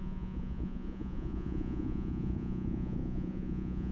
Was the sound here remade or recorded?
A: remade